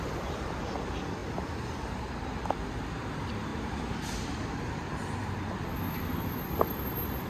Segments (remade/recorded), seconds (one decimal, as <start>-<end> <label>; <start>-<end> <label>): 0.0-7.3 recorded